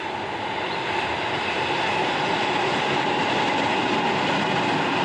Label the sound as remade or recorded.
recorded